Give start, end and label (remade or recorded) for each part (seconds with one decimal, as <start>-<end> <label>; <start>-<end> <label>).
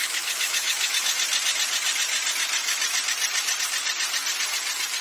0.0-1.0 remade; 1.0-5.0 recorded